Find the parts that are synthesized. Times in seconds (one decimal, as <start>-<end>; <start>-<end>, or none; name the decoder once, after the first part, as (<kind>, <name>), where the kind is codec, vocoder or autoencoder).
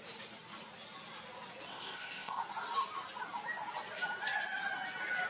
1.7-2.4 (codec, ZipCodec)